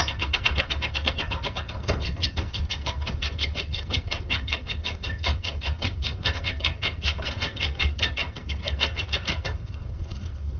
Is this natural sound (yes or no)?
no